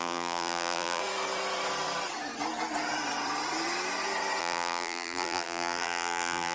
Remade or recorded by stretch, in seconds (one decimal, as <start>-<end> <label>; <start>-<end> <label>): 0.0-1.0 remade; 1.0-4.4 recorded; 4.4-6.5 remade